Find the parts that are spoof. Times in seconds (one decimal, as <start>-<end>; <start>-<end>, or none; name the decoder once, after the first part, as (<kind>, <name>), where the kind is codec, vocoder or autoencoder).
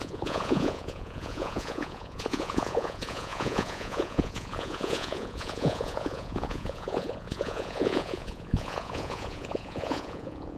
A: 0.0-10.6 (vocoder, Vocos)